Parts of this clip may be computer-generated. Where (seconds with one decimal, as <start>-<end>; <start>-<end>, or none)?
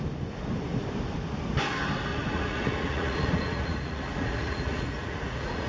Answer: 2.1-5.7